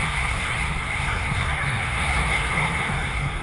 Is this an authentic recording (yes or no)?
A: no